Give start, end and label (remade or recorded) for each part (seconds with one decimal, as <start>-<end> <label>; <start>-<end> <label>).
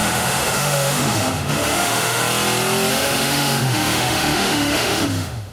0.0-2.2 remade; 2.2-2.9 recorded; 2.9-5.5 remade